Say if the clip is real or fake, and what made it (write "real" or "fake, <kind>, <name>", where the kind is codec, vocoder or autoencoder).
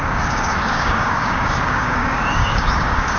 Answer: fake, codec, DAC